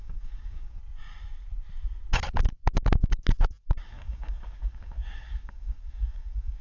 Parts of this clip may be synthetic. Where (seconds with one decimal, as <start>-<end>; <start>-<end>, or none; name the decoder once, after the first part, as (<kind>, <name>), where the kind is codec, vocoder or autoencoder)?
0.0-0.8 (codec, DAC); 3.8-6.6